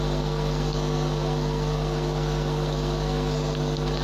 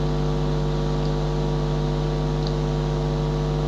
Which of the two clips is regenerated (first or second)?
first